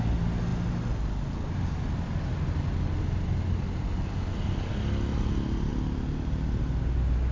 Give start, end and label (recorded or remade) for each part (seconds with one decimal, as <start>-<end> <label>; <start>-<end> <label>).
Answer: 0.0-7.3 recorded